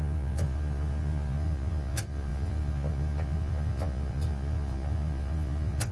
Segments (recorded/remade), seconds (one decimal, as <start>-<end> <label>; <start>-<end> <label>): 0.0-5.9 remade